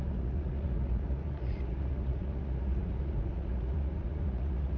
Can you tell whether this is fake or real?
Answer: fake